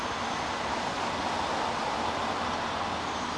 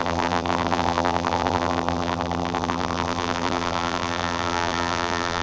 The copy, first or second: second